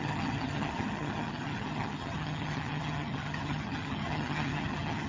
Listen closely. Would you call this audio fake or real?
fake